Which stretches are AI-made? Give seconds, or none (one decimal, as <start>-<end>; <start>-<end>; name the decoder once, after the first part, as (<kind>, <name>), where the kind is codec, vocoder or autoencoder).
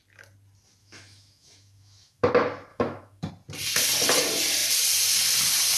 0.8-2.3 (autoencoder, DAC-VAE); 2.7-3.3